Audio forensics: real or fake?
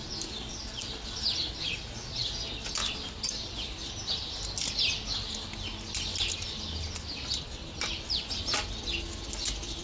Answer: real